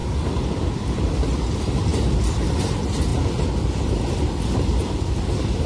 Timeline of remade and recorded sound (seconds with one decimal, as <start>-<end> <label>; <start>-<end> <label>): 0.0-5.7 recorded